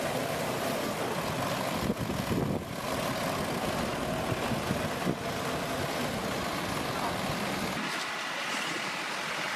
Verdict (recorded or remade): recorded